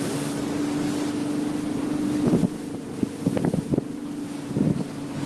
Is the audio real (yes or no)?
yes